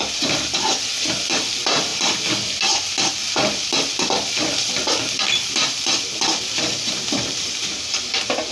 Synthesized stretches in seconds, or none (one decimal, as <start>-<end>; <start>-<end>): 0.0-1.9; 3.5-8.5

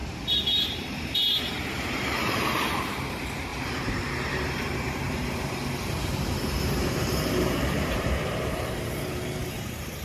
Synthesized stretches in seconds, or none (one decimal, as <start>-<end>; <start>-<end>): 0.0-10.0

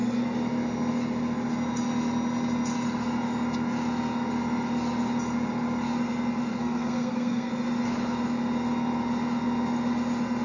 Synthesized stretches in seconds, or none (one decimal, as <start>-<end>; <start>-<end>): 6.5-7.5

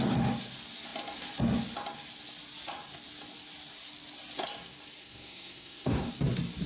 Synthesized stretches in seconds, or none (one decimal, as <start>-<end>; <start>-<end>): 5.0-6.1